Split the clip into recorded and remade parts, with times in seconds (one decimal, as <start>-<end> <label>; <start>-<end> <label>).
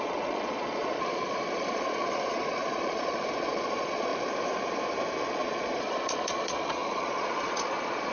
0.0-4.1 remade; 4.1-5.3 recorded; 5.3-8.1 remade